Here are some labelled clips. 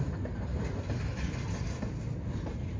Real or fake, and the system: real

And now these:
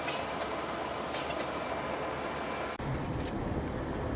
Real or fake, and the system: real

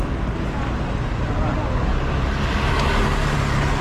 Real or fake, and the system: real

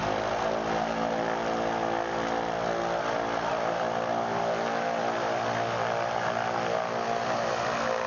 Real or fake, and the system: real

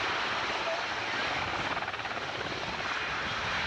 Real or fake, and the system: real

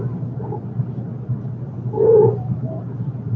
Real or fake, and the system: real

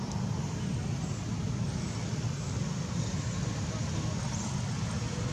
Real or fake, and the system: real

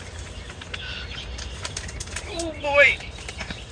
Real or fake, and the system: real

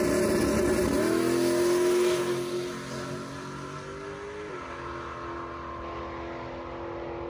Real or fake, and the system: real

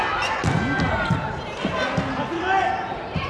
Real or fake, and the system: real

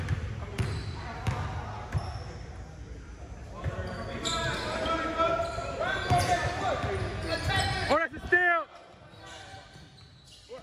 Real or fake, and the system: real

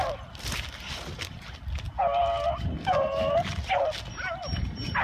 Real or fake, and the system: real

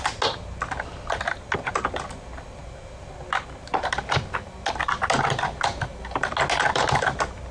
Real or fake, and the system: real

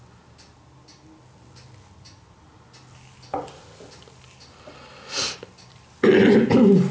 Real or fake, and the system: real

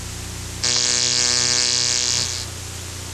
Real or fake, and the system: real